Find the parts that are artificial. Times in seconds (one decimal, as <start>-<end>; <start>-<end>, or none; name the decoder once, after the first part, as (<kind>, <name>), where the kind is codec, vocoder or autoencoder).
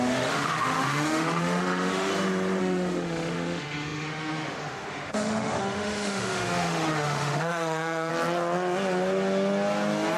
0.0-2.1 (autoencoder, DAC-VAE); 2.6-8.1